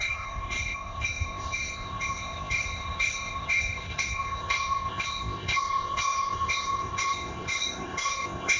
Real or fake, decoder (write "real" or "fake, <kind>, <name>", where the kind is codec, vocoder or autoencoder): fake, codec, ZipCodec